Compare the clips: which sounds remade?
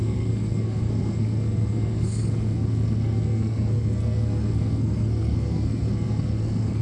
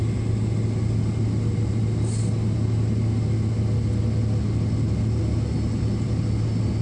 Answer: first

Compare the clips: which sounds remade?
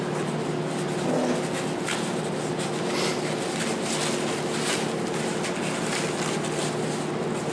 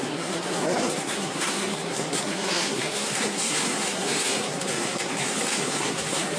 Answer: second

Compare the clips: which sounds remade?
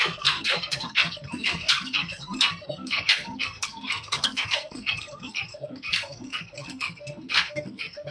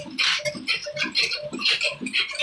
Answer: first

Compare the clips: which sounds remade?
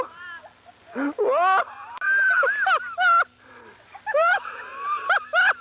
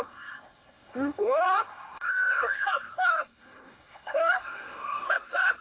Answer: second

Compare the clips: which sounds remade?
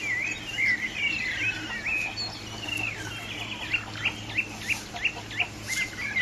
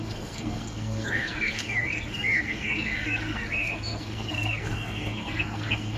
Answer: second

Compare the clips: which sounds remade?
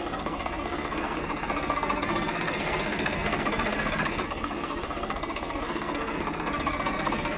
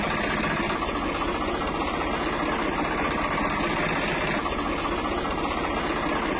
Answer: first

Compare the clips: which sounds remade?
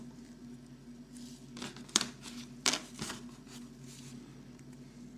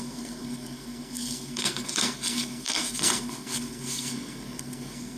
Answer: second